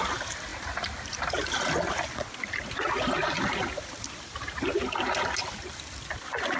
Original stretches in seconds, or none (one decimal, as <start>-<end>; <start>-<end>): 0.0-6.6